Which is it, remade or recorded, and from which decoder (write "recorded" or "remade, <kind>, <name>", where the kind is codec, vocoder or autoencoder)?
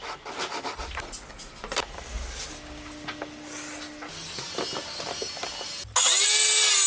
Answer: recorded